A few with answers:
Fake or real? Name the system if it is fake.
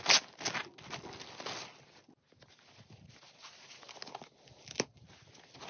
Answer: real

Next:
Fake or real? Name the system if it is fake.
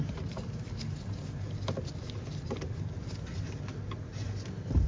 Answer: real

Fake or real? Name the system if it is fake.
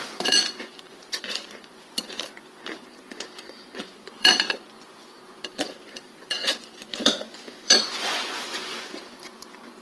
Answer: fake, vocoder, Vocos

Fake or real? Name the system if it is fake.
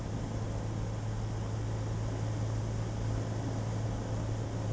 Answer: real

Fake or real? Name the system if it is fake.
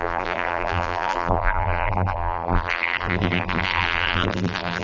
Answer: fake, vocoder, BigVGAN v2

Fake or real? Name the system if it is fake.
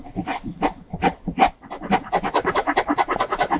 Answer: real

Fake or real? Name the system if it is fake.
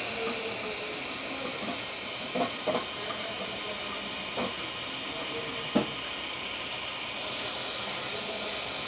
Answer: real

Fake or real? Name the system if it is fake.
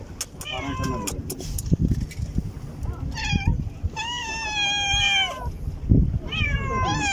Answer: real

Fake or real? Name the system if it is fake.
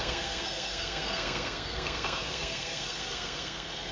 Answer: fake, codec, SNAC